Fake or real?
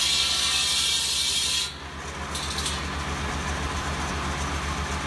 real